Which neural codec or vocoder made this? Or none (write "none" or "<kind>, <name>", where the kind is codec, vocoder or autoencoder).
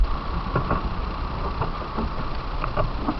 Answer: none